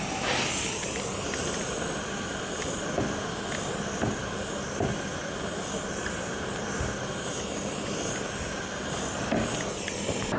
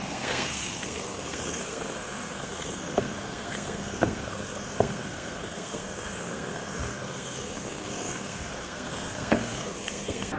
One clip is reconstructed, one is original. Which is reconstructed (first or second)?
second